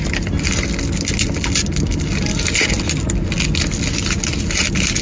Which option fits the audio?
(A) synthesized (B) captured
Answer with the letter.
B